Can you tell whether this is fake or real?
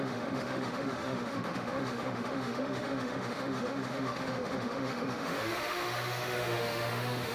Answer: fake